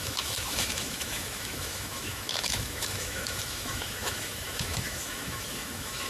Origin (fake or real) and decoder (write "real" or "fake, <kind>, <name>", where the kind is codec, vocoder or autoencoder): fake, autoencoder, DAC-VAE